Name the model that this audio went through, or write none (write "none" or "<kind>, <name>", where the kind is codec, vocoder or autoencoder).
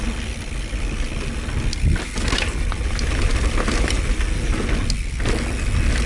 none